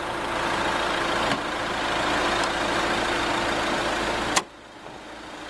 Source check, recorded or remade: recorded